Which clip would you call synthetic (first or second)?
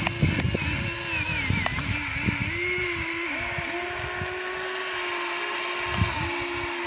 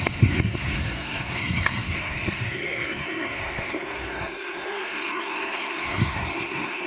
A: second